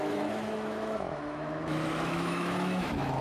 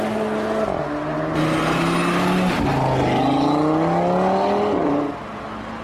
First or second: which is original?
second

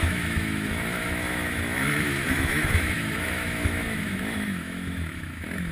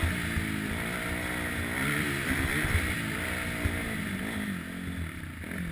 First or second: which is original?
second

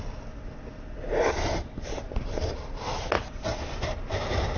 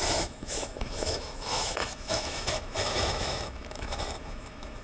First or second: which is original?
first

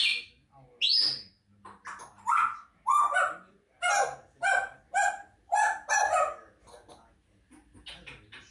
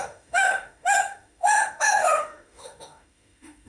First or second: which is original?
first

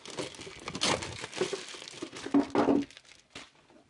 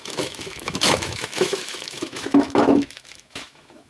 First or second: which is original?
first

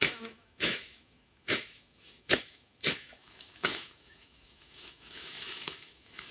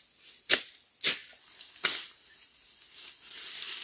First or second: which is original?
second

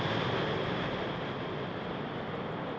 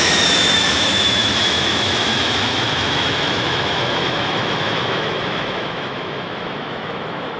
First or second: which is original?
first